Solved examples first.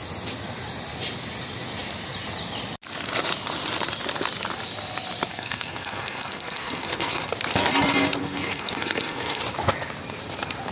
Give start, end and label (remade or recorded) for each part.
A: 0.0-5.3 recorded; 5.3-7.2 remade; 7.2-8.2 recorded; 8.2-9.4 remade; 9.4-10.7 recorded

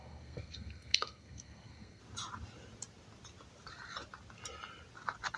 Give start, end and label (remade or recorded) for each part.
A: 0.0-2.0 remade; 2.0-5.4 recorded

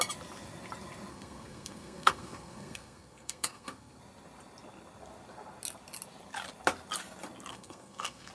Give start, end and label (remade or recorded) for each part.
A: 0.0-1.1 recorded; 1.1-4.0 remade; 4.0-7.5 recorded; 7.5-8.3 remade

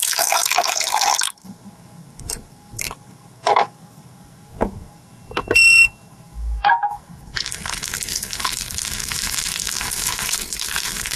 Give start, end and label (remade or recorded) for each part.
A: 0.0-11.2 remade

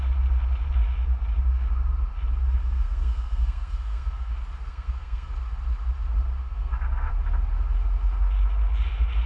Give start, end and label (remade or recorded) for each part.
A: 0.0-2.6 recorded; 2.6-4.3 remade; 4.3-4.7 recorded; 4.7-5.3 remade; 5.3-6.4 recorded; 6.4-7.1 remade; 7.1-9.3 recorded

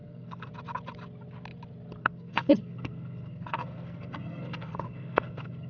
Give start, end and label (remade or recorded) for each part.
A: 0.0-0.5 remade; 0.5-2.0 recorded; 2.0-5.7 remade

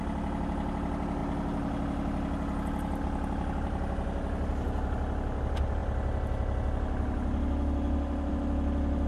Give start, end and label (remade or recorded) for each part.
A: 0.0-9.1 recorded

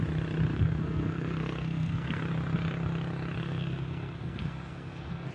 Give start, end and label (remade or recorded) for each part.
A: 0.0-0.5 recorded; 0.5-2.2 remade; 2.2-3.4 recorded; 3.4-5.3 remade